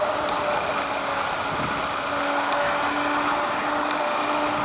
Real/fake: real